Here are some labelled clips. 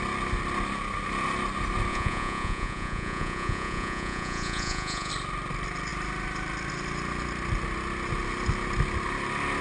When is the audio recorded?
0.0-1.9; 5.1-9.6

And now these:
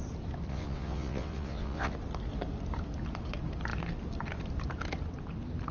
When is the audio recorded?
0.0-0.5; 1.9-5.7

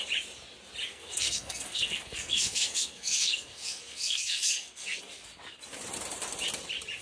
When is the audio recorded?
0.0-0.9; 5.0-7.0

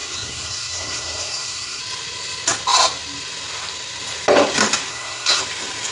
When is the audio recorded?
1.8-4.9; 5.4-5.9

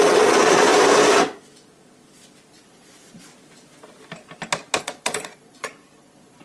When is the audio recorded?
0.7-2.5; 3.3-4.8

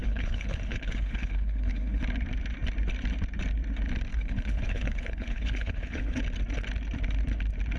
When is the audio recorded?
2.0-4.1; 6.2-7.8